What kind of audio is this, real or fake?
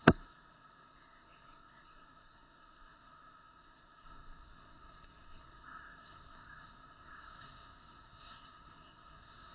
fake